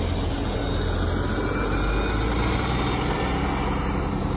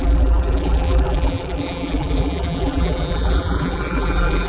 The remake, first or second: second